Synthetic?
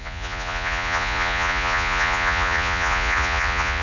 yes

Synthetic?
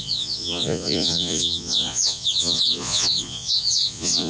yes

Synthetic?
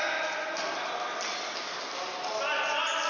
no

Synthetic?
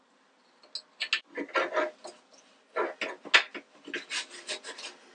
no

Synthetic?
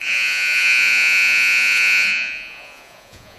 yes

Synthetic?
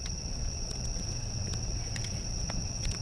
yes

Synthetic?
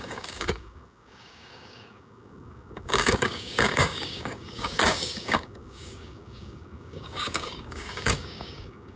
yes